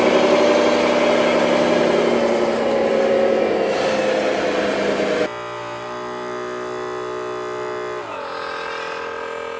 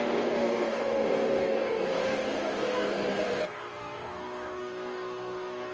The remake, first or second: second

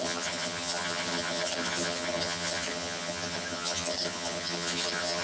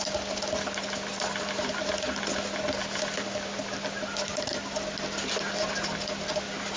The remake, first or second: first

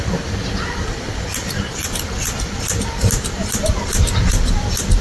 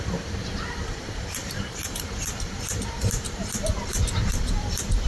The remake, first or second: second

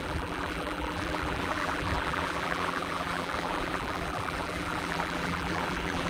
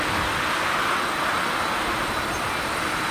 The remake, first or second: first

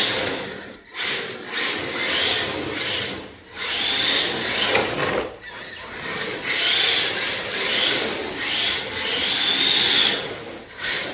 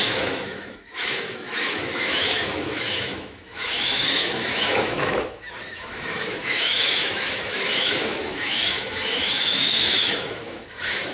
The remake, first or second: second